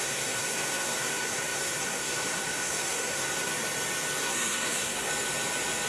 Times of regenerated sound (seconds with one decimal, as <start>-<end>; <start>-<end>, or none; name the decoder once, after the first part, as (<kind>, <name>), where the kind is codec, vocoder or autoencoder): 0.0-3.5 (codec, SNAC); 4.2-5.1